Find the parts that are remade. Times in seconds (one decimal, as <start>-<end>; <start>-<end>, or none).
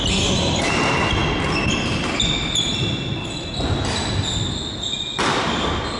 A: none